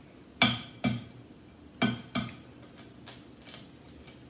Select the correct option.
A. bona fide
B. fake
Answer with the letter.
A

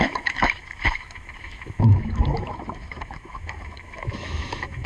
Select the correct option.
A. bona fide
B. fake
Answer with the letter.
B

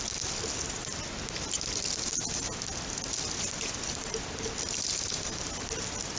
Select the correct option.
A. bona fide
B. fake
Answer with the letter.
A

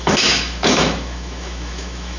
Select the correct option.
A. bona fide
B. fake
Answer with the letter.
B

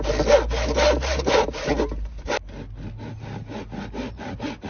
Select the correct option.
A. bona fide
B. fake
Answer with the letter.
A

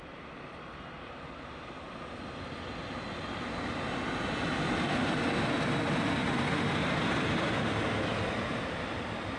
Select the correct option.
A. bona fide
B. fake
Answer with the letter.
A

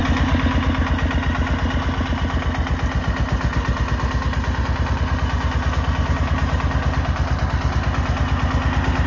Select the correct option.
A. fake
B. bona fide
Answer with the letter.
B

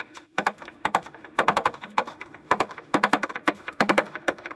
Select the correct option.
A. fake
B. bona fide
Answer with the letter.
A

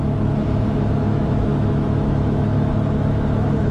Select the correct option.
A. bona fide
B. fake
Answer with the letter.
B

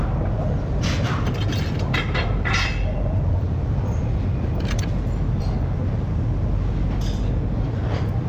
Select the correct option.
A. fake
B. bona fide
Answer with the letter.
B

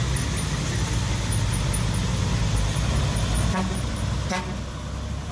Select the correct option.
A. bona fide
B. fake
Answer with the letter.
A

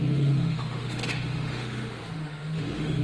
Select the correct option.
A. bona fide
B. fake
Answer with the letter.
B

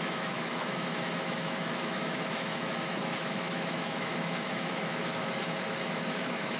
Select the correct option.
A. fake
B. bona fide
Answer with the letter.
A